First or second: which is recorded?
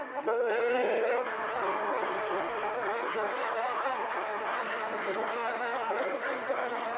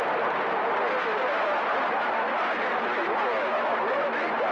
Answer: second